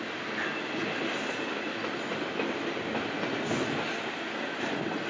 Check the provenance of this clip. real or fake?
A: real